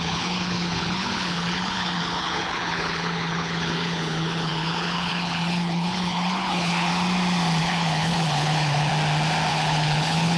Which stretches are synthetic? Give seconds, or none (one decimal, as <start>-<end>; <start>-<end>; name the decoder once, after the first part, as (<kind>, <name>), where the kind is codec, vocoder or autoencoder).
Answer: 0.0-6.9 (codec, HILCodec); 7.6-8.9; 9.5-10.4